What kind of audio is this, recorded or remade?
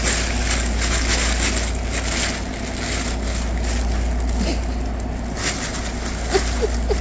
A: recorded